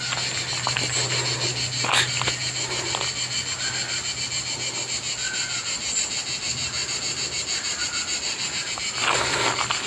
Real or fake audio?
real